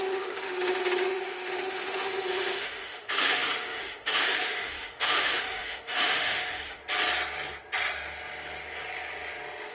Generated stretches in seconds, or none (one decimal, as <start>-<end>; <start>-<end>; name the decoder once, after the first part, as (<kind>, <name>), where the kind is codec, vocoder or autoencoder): 0.0-6.8 (autoencoder, DAC-VAE)

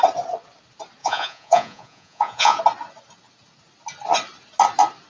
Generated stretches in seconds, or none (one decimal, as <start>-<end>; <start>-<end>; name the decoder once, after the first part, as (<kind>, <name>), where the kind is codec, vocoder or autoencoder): 1.0-2.6 (vocoder, Vocos)